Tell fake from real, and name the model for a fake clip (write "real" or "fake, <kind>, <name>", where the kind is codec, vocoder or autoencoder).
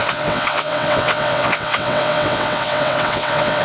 fake, vocoder, WaveNeXt